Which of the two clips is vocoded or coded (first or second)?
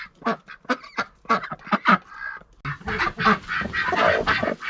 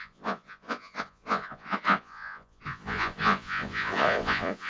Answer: second